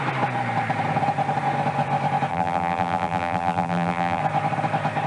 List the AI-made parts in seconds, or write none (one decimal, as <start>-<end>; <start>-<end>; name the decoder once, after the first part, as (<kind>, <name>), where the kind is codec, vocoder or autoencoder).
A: 2.3-4.2 (vocoder, BigVGAN v2)